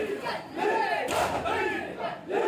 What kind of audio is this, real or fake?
real